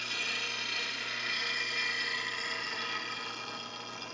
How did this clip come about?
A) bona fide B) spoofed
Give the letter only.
A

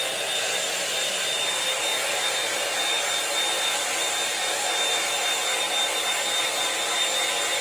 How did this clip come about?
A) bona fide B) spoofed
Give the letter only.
A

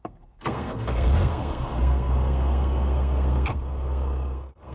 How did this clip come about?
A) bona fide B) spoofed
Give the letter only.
B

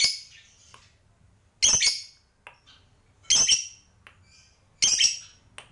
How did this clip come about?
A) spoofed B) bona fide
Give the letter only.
B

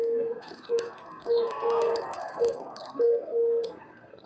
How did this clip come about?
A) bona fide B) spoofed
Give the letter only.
B